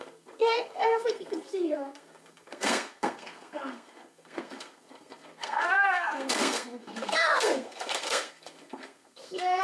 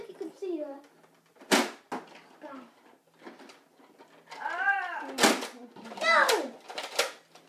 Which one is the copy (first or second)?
first